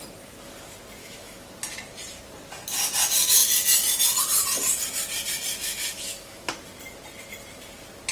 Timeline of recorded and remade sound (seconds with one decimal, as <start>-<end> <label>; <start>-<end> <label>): 0.0-1.0 recorded; 1.0-1.5 remade; 1.5-5.5 recorded; 5.5-6.5 remade; 6.5-8.1 recorded